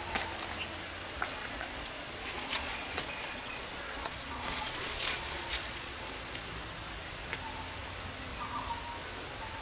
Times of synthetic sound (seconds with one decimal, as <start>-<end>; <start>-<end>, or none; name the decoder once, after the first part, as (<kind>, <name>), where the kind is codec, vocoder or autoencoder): 1.4-6.0 (vocoder, Vocos)